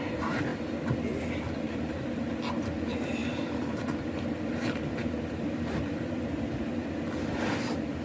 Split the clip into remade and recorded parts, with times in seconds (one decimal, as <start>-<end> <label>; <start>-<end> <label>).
0.0-0.5 remade; 0.5-1.4 recorded; 1.4-8.0 remade